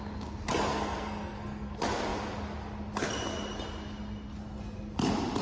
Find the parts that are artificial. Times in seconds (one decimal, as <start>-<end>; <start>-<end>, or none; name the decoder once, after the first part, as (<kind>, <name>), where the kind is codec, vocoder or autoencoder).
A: 0.7-1.7 (codec, SNAC)